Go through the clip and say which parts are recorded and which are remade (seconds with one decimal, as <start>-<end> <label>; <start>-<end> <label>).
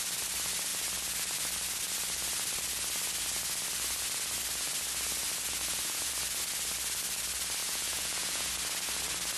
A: 0.0-5.6 recorded; 5.6-6.1 remade; 6.1-7.6 recorded; 7.6-8.5 remade; 8.5-9.4 recorded